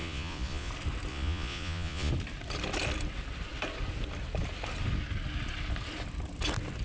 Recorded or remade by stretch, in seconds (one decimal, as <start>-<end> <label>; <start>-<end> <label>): 0.0-0.7 remade; 0.7-1.1 recorded; 1.1-2.1 remade; 2.1-6.8 recorded